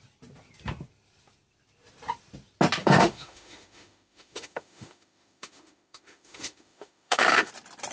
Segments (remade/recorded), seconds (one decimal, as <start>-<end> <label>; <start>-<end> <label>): 0.0-2.8 recorded; 2.8-7.5 remade; 7.5-7.9 recorded